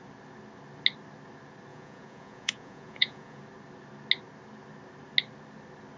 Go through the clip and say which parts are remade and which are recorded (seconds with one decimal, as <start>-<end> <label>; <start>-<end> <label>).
0.0-1.7 recorded; 1.7-3.4 remade; 3.4-6.0 recorded